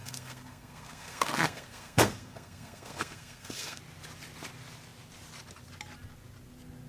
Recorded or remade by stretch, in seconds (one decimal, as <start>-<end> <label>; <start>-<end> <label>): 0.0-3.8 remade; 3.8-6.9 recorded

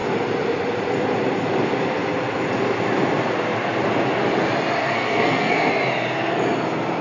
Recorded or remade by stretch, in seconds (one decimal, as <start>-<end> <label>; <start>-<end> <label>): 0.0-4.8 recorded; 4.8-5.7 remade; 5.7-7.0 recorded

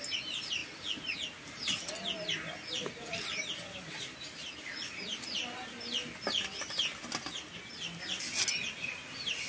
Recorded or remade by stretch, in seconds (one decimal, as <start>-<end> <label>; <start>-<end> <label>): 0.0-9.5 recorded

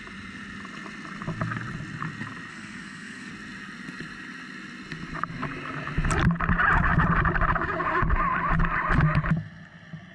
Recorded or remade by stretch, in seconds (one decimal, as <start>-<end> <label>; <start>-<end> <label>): 0.0-2.5 recorded; 2.5-3.3 remade; 3.3-10.1 recorded

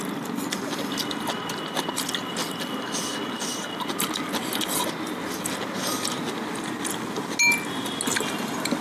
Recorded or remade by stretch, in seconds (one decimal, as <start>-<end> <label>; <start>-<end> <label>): 0.0-8.8 recorded